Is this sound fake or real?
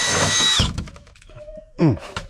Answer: fake